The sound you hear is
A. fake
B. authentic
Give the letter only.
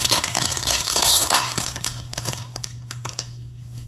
A